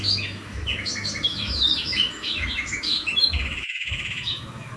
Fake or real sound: fake